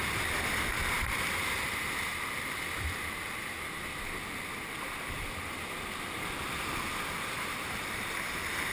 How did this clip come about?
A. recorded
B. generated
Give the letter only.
A